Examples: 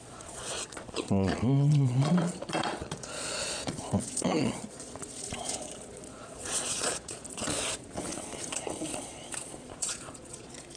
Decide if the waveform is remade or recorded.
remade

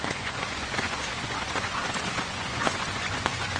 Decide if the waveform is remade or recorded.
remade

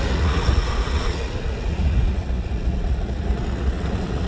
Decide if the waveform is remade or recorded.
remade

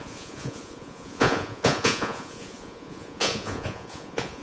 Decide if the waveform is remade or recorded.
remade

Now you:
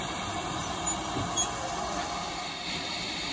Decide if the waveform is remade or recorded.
recorded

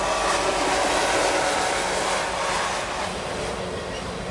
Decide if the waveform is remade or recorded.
recorded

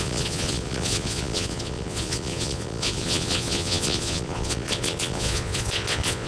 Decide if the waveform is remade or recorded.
remade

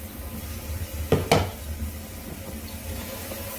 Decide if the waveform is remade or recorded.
recorded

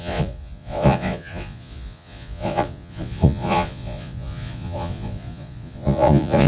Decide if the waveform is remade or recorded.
remade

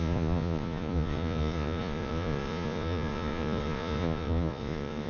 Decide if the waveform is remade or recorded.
remade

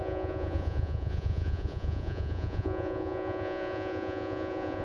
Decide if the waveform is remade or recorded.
remade